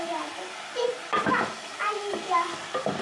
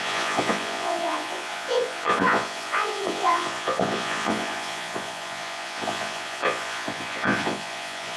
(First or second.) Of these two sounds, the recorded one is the first